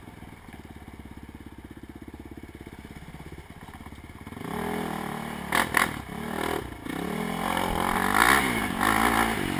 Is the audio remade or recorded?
recorded